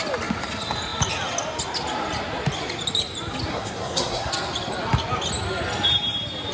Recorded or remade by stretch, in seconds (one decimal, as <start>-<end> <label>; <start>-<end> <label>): 0.0-3.5 recorded; 3.5-4.3 remade; 4.3-6.5 recorded